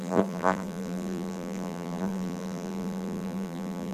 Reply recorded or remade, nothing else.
remade